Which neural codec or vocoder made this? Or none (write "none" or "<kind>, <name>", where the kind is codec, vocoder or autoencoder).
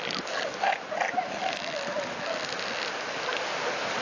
none